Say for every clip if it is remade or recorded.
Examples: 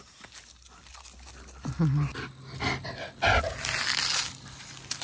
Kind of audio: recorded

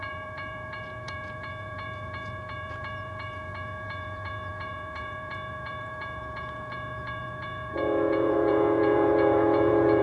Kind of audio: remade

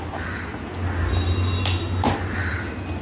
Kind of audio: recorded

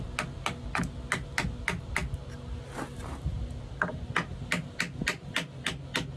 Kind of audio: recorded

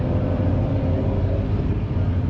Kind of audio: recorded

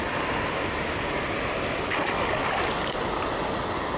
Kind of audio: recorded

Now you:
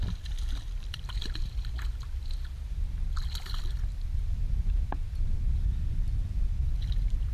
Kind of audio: remade